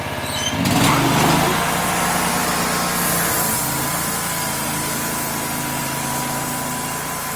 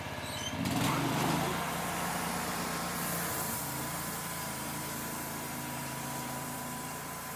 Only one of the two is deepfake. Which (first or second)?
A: second